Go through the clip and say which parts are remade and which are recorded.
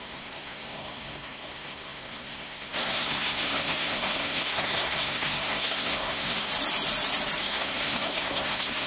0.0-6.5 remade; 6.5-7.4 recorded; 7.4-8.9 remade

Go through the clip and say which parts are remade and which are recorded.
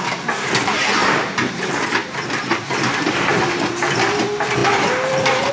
0.0-5.5 remade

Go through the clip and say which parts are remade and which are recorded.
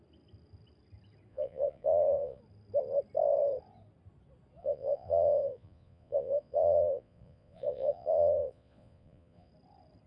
0.0-1.3 recorded; 1.3-2.4 remade; 2.4-4.6 recorded; 4.6-9.5 remade; 9.5-10.1 recorded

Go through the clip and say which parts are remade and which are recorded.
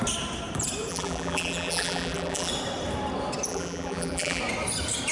0.0-0.9 recorded; 0.9-2.5 remade; 2.5-3.5 recorded; 3.5-4.4 remade; 4.4-5.1 recorded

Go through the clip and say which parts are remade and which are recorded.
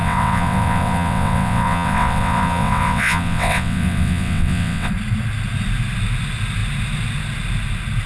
0.0-4.9 remade; 4.9-8.1 recorded